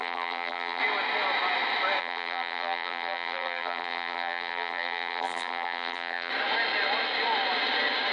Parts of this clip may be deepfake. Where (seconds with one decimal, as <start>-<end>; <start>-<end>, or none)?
0.0-0.8; 2.0-6.3